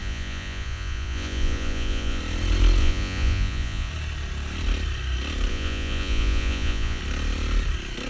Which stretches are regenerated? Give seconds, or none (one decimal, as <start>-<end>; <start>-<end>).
0.0-2.2; 2.8-3.9; 5.5-7.0